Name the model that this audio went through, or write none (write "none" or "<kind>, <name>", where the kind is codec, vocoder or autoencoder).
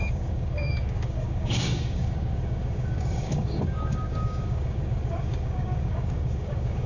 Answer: codec, DAC